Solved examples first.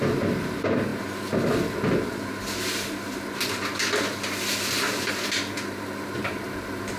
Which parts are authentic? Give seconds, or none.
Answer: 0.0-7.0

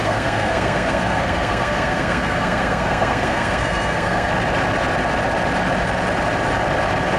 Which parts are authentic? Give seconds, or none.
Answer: 4.3-7.2